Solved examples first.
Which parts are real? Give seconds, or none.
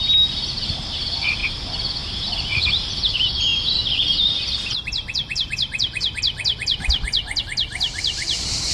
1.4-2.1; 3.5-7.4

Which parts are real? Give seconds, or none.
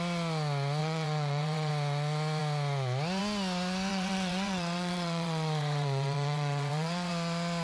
0.0-0.8; 1.7-3.9; 7.1-7.6